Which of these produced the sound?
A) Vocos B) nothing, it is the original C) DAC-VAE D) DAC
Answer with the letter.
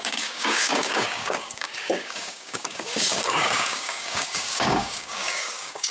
D